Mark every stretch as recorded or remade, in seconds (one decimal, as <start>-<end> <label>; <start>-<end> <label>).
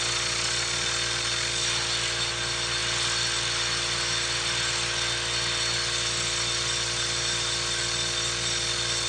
0.0-9.1 recorded